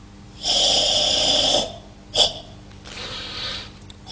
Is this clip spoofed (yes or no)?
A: no